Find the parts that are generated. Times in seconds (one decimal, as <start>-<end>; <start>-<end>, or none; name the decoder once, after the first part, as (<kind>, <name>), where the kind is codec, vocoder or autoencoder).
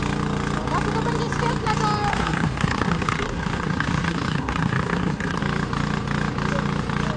2.1-5.4 (codec, SNAC)